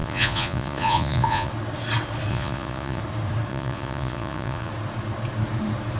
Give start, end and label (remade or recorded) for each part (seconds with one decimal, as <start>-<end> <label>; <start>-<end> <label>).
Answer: 0.0-1.5 remade; 1.5-2.3 recorded; 2.3-3.0 remade; 3.0-3.5 recorded; 3.5-4.7 remade; 4.7-6.0 recorded

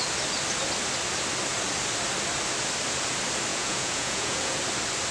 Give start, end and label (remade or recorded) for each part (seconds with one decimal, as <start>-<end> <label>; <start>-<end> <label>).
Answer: 0.0-3.5 recorded; 3.5-4.6 remade; 4.6-5.1 recorded

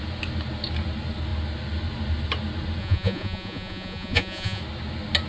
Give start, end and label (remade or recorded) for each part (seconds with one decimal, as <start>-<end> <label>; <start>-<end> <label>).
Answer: 0.0-2.8 recorded; 2.8-4.6 remade; 4.6-5.3 recorded